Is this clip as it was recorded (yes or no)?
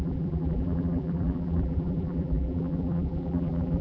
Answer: no